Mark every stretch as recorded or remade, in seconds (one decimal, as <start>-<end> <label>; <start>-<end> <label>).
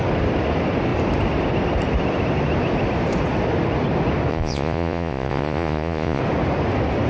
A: 0.0-4.3 recorded; 4.3-6.2 remade; 6.2-7.1 recorded